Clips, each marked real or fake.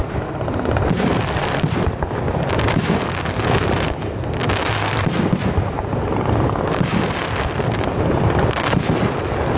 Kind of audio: fake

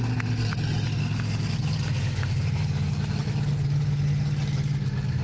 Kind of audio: real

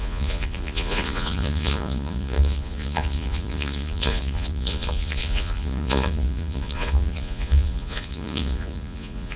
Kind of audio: fake